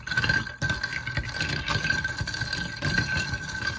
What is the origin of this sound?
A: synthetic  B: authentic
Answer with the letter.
B